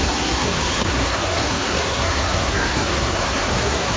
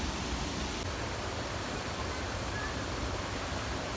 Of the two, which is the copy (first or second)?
first